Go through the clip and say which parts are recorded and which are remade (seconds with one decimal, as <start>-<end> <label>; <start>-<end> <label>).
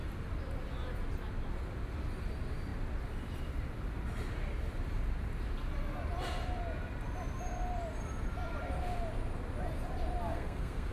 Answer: 0.0-10.3 recorded; 10.3-10.9 remade